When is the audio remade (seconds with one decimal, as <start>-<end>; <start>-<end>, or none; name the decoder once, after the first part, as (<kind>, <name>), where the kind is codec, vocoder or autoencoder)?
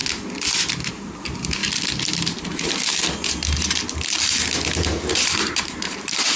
0.9-1.6 (vocoder, BigVGAN v2); 4.9-6.4